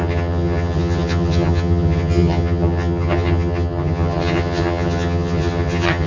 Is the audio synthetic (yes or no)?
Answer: yes